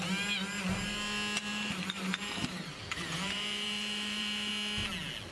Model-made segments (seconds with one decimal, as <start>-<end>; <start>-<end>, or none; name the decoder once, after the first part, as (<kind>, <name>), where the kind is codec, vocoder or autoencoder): 1.5-4.5 (vocoder, BigVGAN v2)